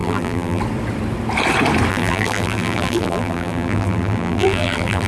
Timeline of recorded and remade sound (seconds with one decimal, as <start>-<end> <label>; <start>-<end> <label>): 0.0-0.6 remade; 0.6-1.9 recorded; 1.9-5.1 remade